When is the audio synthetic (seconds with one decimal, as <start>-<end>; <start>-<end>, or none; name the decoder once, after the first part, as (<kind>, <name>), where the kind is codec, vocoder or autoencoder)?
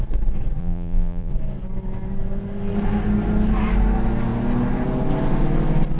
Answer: 0.6-1.3 (vocoder, BigVGAN v2)